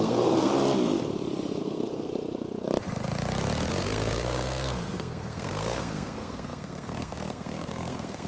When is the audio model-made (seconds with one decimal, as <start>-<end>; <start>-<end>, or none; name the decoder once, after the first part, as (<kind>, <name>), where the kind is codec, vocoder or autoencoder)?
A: 0.0-0.5 (codec, SNAC); 1.6-2.1; 3.7-8.3